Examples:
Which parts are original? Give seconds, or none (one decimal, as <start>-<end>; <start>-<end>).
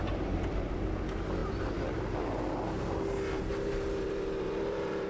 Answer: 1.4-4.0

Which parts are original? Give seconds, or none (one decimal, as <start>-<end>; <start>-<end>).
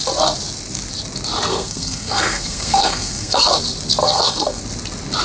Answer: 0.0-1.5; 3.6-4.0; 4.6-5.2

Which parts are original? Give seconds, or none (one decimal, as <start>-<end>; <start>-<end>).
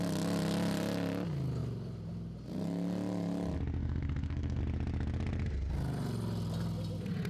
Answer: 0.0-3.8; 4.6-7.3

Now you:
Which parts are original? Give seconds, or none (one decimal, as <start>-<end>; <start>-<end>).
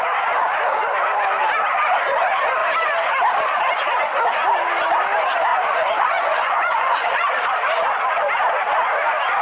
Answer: 0.0-5.5; 7.3-9.4